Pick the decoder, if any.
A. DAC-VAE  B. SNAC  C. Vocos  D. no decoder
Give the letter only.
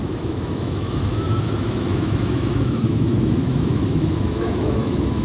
A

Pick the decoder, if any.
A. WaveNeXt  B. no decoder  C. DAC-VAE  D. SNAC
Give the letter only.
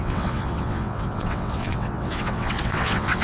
A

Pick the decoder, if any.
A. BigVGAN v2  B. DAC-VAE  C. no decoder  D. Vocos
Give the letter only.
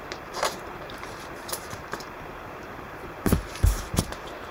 A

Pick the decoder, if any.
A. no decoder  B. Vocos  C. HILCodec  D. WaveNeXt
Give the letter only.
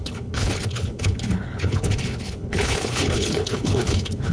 C